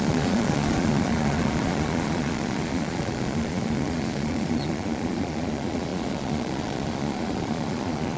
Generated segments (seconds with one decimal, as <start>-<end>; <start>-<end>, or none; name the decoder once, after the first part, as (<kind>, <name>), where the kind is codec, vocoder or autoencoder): 0.0-8.2 (vocoder, Vocos)